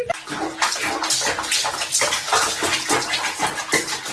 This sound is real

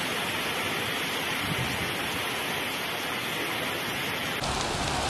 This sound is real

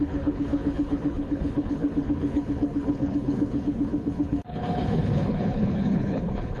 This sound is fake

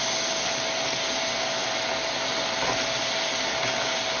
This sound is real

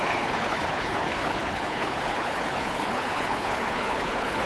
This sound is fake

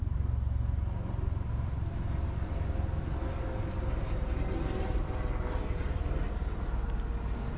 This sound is real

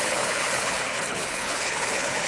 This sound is fake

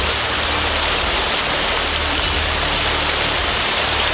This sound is real